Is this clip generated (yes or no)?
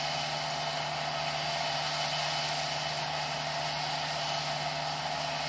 no